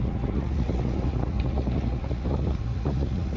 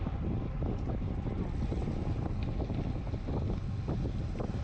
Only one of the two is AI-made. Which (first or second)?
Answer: first